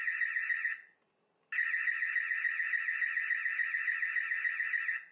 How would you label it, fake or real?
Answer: real